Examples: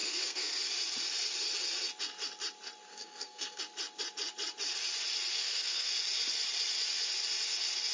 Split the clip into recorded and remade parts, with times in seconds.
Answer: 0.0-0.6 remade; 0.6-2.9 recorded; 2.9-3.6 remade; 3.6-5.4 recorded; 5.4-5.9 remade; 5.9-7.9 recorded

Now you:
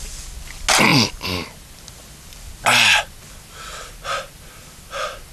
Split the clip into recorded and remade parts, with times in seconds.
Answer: 0.0-5.3 recorded